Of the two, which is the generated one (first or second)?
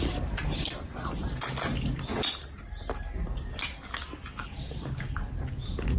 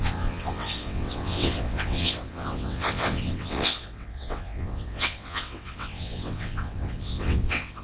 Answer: second